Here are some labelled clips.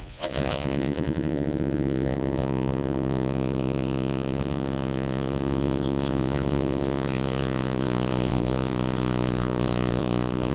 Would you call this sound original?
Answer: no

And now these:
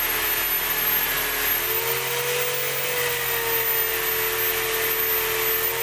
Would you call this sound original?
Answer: yes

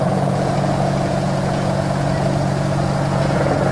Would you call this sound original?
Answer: no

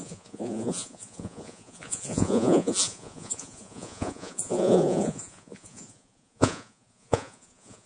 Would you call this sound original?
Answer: no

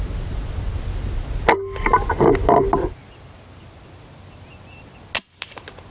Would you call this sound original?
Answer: yes